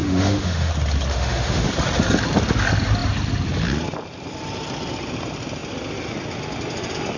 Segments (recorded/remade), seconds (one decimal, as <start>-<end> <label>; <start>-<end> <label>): 0.0-0.7 remade; 0.7-1.1 recorded; 1.1-1.7 remade; 1.7-7.2 recorded